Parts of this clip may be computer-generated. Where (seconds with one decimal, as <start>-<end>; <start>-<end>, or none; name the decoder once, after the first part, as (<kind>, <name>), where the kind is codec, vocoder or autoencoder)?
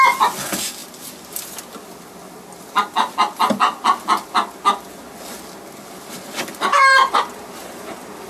6.7-8.3 (vocoder, BigVGAN v2)